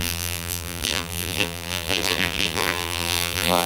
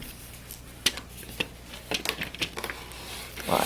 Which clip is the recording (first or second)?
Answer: second